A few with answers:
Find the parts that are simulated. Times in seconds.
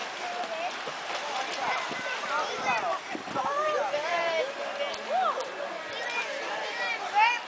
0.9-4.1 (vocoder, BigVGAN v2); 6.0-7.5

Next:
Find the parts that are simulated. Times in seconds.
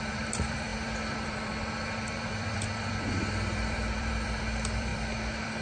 0.0-5.6 (vocoder, BigVGAN v2)